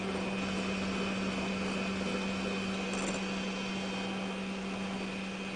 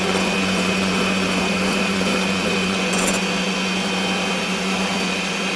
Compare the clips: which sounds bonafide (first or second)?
first